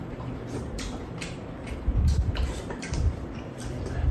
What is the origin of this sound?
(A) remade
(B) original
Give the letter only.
A